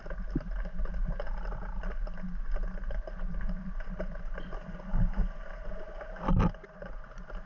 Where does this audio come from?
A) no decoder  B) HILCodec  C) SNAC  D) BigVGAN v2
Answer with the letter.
A